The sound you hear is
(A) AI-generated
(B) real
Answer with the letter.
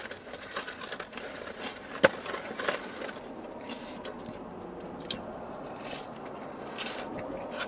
B